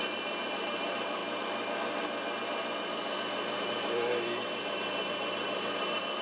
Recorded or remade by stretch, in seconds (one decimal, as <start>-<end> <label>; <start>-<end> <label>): 0.0-1.2 remade; 1.2-3.6 recorded; 3.6-6.2 remade